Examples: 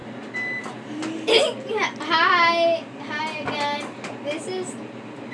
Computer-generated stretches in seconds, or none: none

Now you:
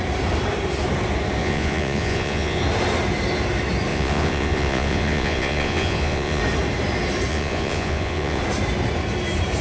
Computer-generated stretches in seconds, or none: 1.4-2.6 (vocoder, Vocos); 3.9-6.4; 7.3-8.4

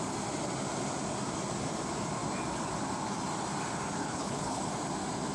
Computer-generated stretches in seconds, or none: 4.0-4.6 (codec, HILCodec)

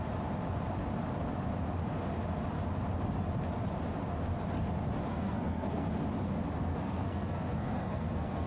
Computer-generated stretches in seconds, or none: 5.1-5.9 (codec, SNAC); 6.7-8.5

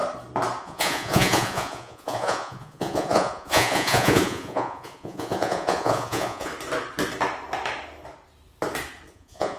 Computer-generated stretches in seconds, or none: 0.6-6.5 (vocoder, Vocos); 9.1-9.6

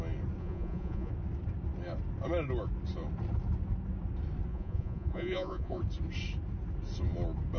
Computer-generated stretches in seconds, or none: 0.4-1.1 (vocoder, Vocos); 4.5-5.8